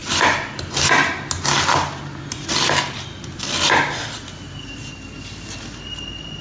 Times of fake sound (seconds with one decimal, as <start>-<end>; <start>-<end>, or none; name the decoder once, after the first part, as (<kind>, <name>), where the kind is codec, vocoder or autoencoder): none